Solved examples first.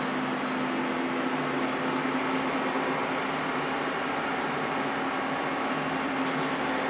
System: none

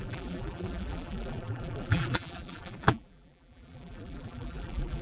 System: vocoder, BigVGAN v2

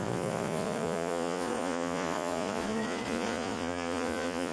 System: vocoder, Vocos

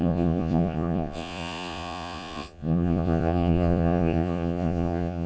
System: vocoder, Vocos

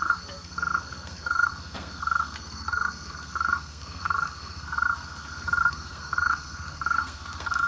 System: codec, SNAC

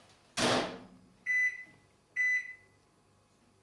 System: none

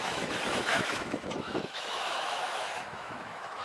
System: autoencoder, DAC-VAE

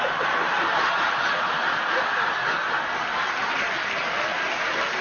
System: none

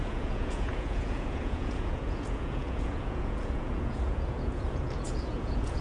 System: vocoder, Vocos